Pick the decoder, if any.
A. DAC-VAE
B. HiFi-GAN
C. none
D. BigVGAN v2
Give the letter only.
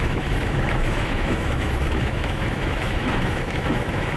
A